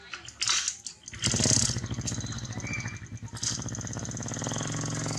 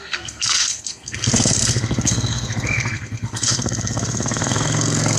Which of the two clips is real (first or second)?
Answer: first